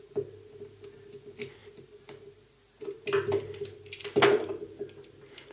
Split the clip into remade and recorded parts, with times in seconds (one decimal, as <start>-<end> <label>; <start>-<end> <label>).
0.0-5.5 recorded